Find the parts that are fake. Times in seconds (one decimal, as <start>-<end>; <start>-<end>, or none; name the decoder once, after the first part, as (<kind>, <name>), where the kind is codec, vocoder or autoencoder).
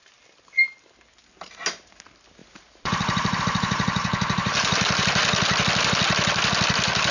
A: 1.4-5.2 (vocoder, BigVGAN v2)